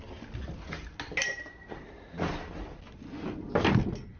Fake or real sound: real